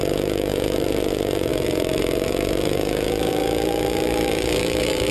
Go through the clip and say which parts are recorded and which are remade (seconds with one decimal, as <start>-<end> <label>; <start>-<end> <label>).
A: 0.0-5.1 remade